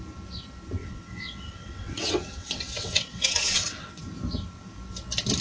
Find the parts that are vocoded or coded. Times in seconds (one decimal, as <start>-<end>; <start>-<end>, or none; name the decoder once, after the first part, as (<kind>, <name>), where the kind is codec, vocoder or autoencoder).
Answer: 0.8-4.0 (vocoder, WaveNeXt)